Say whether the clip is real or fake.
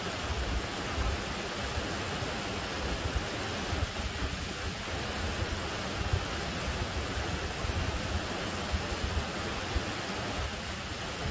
real